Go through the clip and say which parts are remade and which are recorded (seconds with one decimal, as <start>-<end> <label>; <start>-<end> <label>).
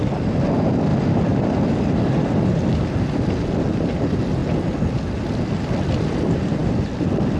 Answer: 0.0-7.4 recorded